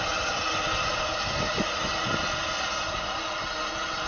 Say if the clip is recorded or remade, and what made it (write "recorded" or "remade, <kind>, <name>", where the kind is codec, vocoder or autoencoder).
recorded